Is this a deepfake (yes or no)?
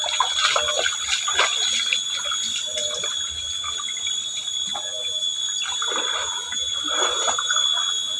no